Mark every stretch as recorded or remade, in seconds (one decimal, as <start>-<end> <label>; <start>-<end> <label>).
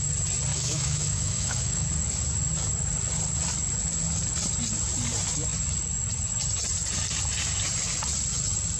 0.0-0.5 recorded; 0.5-1.9 remade; 1.9-8.8 recorded